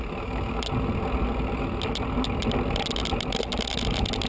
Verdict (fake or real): real